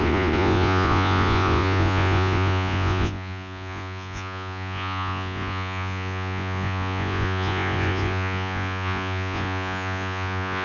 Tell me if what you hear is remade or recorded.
remade